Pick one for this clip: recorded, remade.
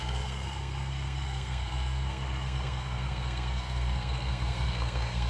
remade